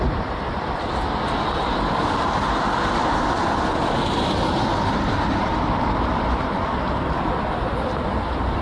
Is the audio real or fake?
fake